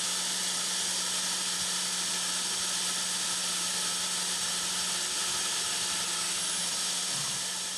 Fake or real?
real